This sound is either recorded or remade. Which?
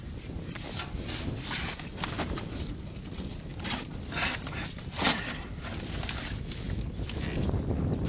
recorded